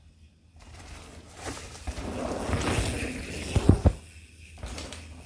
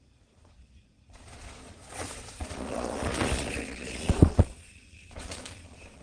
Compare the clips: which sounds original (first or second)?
first